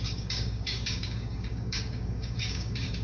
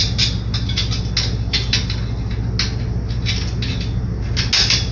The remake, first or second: first